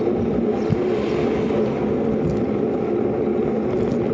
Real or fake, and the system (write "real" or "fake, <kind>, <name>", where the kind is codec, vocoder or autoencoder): real